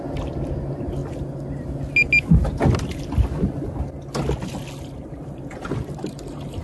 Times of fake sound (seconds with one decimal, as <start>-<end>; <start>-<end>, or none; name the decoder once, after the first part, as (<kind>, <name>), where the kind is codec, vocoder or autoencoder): 5.0-6.6 (vocoder, BigVGAN v2)